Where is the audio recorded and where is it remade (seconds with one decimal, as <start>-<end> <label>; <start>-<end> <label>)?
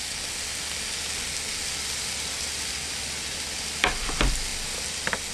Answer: 0.0-5.3 recorded